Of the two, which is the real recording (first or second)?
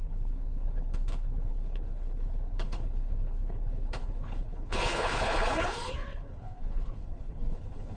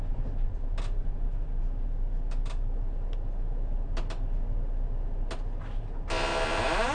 second